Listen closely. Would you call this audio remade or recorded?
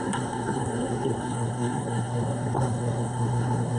remade